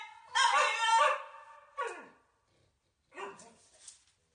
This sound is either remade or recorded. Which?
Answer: recorded